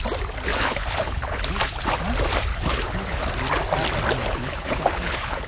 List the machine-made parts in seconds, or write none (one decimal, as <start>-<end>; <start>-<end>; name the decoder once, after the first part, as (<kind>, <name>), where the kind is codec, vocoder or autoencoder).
0.5-1.5 (codec, HILCodec); 2.5-3.3; 4.2-5.5